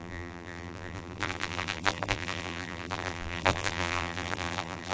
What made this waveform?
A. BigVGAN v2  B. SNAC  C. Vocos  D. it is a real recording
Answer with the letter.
A